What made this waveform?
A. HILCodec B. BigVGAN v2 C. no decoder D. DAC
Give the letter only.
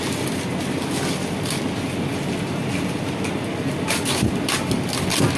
C